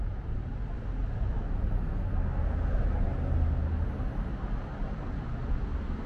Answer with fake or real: real